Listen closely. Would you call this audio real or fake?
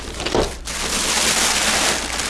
real